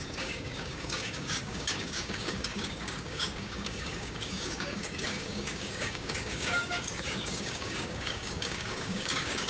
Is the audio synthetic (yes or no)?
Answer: yes